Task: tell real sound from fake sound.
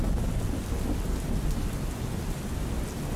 real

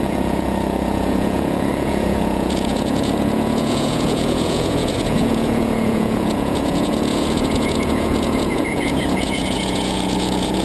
fake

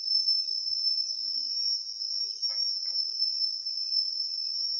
real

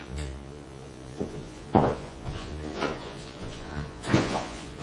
fake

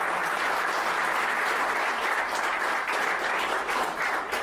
fake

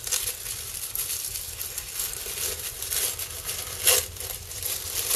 real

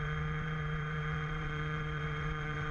fake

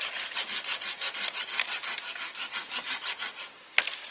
real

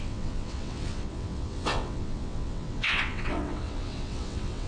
fake